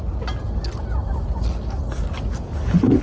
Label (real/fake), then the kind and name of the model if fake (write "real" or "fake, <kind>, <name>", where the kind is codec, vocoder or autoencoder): real